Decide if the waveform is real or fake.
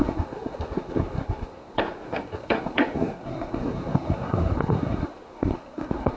fake